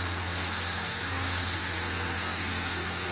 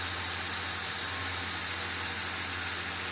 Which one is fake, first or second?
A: first